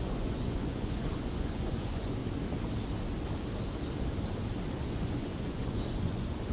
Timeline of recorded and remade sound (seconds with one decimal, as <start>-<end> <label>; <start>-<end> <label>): 0.0-2.2 remade; 2.2-4.8 recorded; 4.8-6.5 remade

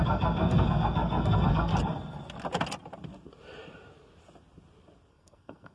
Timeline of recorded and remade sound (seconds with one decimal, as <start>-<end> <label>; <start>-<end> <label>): 0.0-1.7 remade; 1.7-5.1 recorded; 5.1-5.7 remade

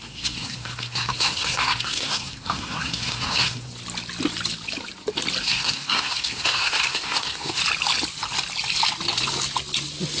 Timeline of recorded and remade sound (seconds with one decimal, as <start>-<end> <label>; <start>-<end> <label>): 0.0-3.7 remade; 3.7-5.4 recorded; 5.4-7.6 remade; 7.6-10.2 recorded

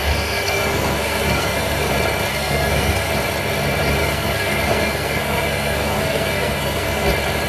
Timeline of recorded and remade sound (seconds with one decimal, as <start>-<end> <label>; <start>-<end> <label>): 0.0-1.9 remade; 1.9-2.3 recorded; 2.3-3.1 remade; 3.1-4.0 recorded; 4.0-7.1 remade; 7.1-7.5 recorded

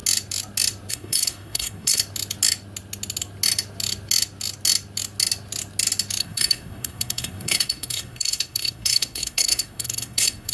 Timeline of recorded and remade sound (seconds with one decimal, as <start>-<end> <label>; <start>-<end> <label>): 0.0-0.9 recorded; 0.9-2.0 remade; 2.0-6.2 recorded; 6.2-10.5 remade

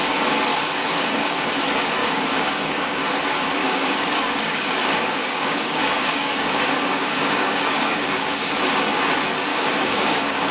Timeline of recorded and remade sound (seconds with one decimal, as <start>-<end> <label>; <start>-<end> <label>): 0.0-0.5 recorded; 0.5-1.5 remade; 1.5-2.0 recorded; 2.0-3.0 remade; 3.0-3.6 recorded; 3.6-8.5 remade; 8.5-9.5 recorded; 9.5-10.5 remade